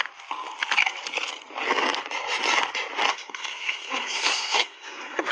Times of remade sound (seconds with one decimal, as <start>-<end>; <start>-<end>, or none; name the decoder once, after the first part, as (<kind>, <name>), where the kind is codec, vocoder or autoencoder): 3.1-5.3 (codec, SNAC)